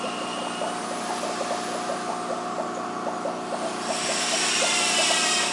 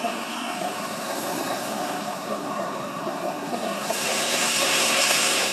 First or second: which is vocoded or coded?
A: second